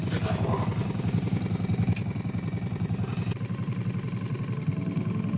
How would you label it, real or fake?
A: real